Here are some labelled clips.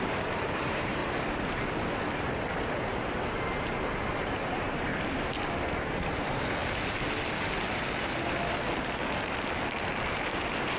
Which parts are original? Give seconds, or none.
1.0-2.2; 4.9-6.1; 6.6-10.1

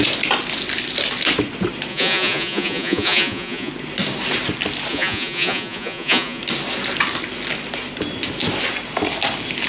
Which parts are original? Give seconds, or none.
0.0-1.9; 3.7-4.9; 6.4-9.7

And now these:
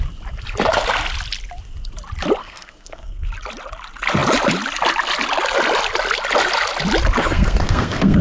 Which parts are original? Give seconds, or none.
0.0-2.4; 3.3-7.2

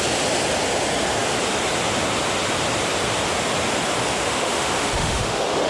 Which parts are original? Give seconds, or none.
0.0-4.2

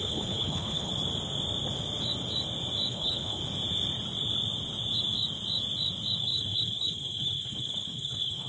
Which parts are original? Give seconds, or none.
0.9-2.9; 3.4-6.2

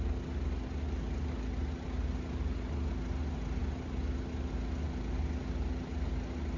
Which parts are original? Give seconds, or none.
0.0-6.6

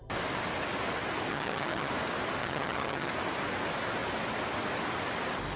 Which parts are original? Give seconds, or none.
0.0-1.3; 1.9-2.4; 3.1-5.6